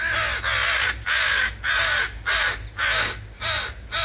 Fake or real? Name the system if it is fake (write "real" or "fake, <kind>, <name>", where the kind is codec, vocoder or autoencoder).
real